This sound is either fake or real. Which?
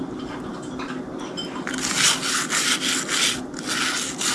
real